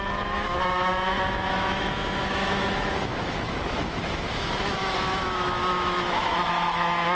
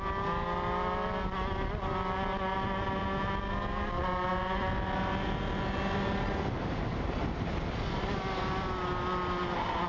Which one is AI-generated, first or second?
first